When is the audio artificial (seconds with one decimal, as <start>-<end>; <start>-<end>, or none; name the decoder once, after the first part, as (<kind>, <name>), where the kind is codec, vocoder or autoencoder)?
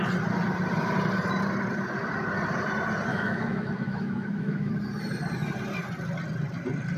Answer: 3.1-4.7 (autoencoder, DAC-VAE)